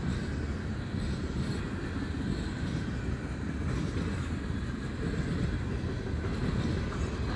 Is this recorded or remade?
recorded